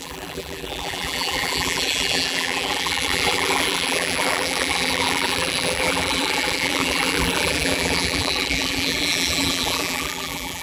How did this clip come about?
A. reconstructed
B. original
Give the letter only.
A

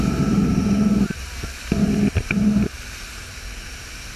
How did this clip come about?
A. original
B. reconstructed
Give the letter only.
B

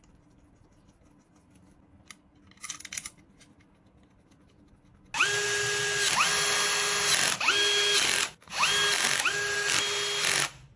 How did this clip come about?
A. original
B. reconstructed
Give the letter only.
A